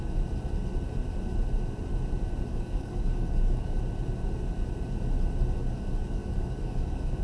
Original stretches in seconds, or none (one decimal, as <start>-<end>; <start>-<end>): 0.0-2.5; 3.8-5.6